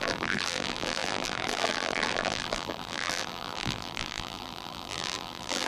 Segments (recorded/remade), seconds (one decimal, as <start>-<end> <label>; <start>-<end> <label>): 0.0-5.7 remade